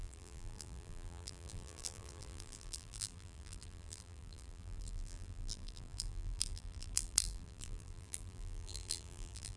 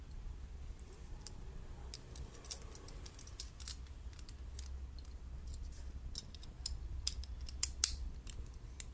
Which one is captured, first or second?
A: second